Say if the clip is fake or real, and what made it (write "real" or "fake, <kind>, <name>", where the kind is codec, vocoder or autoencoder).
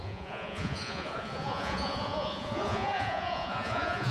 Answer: fake, vocoder, Vocos